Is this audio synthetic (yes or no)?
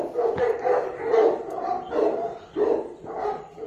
yes